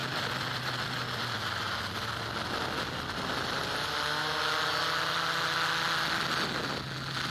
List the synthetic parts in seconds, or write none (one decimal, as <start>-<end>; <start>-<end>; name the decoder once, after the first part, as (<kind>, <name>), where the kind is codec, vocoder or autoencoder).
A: none